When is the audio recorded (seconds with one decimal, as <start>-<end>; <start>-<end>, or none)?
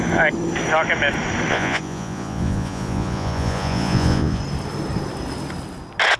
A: 0.0-1.5; 4.4-6.2